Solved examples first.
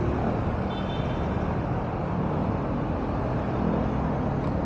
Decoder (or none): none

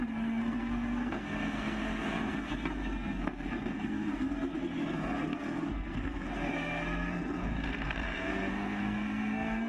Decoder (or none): codec, SNAC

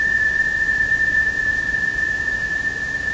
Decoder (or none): vocoder, Vocos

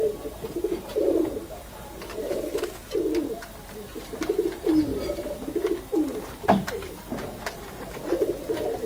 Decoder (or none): vocoder, BigVGAN v2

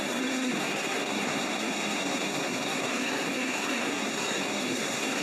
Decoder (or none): codec, SNAC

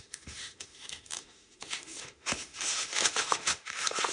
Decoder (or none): autoencoder, DAC-VAE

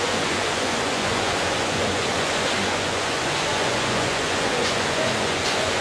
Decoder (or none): vocoder, Vocos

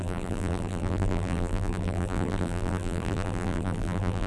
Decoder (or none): vocoder, BigVGAN v2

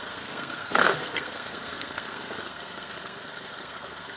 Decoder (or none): codec, SNAC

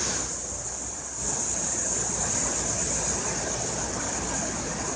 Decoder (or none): none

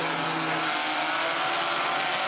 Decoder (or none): none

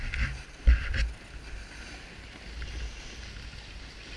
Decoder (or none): none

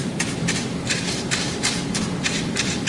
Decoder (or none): vocoder, BigVGAN v2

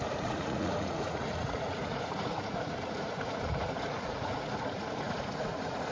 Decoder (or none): vocoder, Vocos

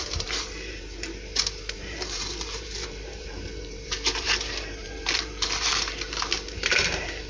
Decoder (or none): vocoder, BigVGAN v2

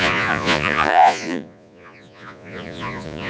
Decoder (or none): vocoder, Vocos